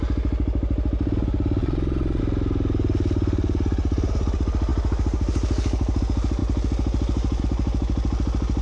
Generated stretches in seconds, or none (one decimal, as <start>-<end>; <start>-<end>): 1.6-2.2